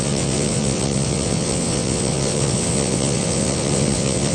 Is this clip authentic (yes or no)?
no